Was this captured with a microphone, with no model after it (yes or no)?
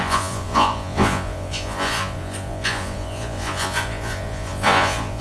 no